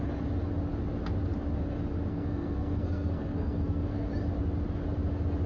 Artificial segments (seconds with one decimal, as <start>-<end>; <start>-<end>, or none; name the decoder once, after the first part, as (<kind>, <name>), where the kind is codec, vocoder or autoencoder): 2.1-4.1 (codec, SNAC)